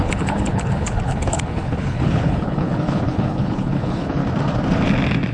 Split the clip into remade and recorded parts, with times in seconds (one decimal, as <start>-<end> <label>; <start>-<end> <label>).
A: 0.0-4.2 remade; 4.2-5.3 recorded